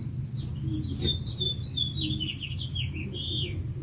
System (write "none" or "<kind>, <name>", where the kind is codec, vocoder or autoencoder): none